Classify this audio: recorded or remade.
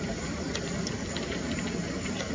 recorded